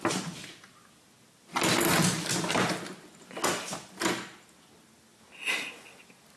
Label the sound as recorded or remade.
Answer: recorded